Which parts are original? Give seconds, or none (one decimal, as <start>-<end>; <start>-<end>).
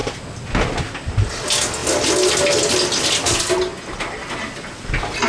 0.0-5.3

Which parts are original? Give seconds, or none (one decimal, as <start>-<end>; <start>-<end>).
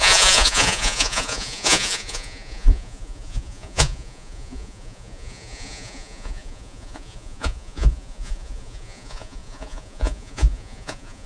none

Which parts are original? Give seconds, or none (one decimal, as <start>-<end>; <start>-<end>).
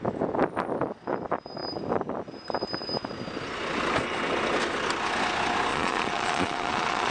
0.0-5.7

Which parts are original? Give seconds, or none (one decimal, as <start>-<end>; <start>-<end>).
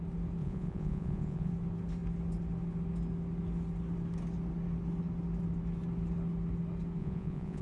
0.0-0.4; 1.5-7.0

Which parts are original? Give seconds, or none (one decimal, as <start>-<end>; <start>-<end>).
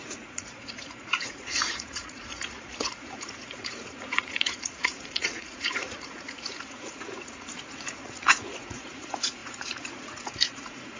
none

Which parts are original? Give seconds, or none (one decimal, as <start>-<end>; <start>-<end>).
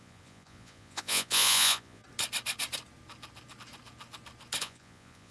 2.0-4.6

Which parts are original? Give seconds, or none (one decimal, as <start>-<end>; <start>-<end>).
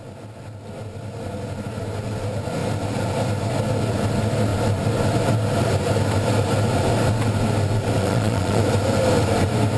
0.0-8.0; 8.6-9.8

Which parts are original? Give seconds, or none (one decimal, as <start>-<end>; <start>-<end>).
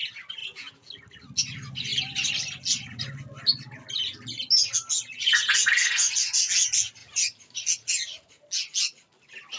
0.0-0.4; 0.9-9.6